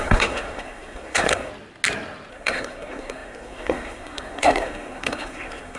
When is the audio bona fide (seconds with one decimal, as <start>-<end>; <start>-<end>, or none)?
1.5-2.3